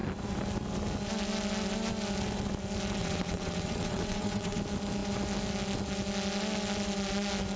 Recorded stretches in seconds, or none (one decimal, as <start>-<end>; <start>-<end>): 0.0-3.0; 4.6-7.6